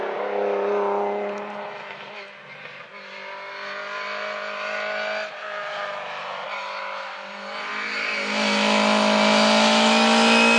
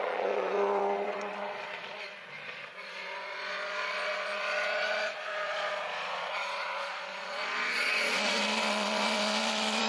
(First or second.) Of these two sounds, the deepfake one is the second